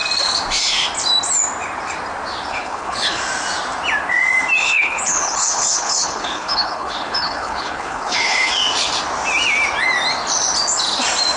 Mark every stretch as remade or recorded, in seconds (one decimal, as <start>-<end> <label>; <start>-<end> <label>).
0.0-2.5 recorded; 2.5-3.2 remade; 3.2-4.6 recorded; 4.6-8.5 remade; 8.5-11.4 recorded